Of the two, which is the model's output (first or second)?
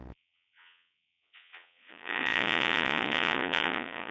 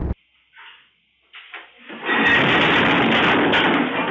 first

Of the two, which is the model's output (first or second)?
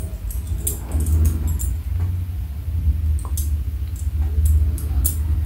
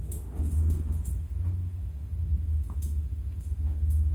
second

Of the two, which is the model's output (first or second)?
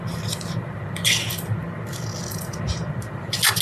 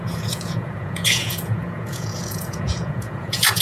second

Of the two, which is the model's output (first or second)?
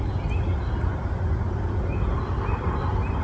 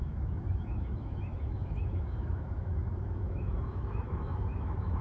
second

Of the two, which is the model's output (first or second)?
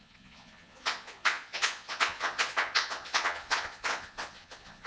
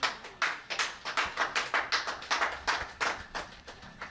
first